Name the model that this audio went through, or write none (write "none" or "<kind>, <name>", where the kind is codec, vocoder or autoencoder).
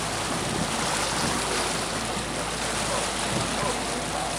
none